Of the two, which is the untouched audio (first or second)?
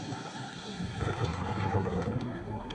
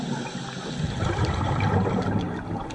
second